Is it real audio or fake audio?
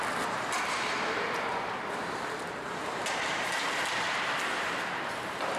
real